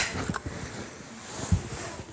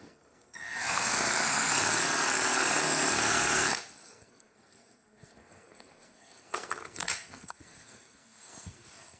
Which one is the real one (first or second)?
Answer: first